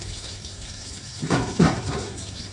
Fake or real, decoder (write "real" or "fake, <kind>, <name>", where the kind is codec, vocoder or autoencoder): fake, codec, SNAC